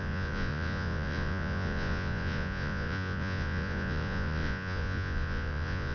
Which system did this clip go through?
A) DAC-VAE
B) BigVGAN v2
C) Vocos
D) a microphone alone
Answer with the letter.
C